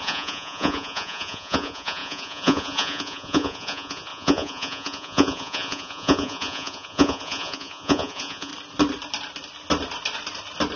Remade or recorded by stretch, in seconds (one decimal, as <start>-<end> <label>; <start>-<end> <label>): 0.0-8.5 remade; 8.5-10.8 recorded